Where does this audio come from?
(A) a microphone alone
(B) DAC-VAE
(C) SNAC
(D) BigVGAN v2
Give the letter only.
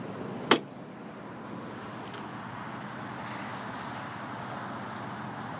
A